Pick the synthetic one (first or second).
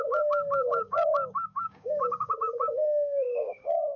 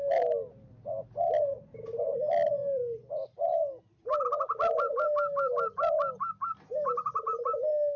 first